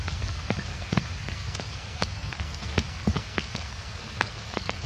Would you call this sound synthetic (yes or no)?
yes